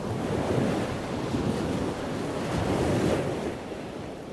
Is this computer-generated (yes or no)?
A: no